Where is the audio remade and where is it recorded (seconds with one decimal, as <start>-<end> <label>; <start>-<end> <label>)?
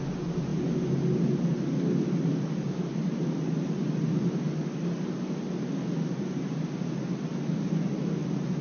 0.0-8.6 recorded